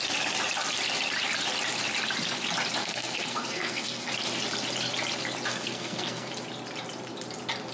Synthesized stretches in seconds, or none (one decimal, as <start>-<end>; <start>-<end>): 2.8-4.1; 5.5-6.3